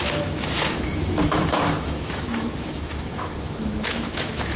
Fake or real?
fake